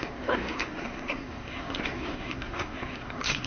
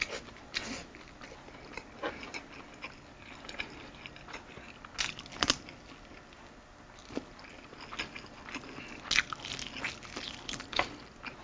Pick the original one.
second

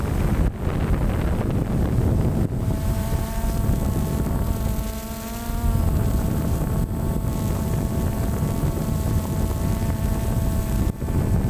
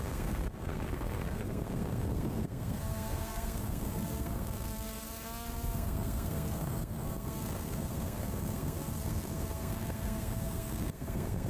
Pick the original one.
first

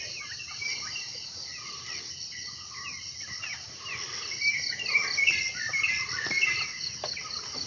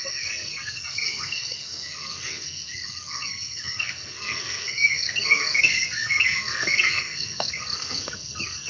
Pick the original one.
first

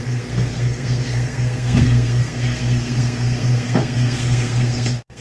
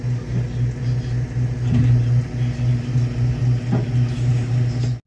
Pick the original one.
second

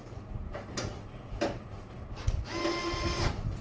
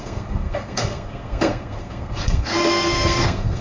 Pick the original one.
first